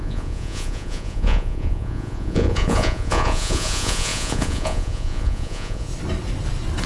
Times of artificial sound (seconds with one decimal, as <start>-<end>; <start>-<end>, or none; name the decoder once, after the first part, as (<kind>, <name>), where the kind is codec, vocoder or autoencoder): 0.0-5.9 (vocoder, Vocos)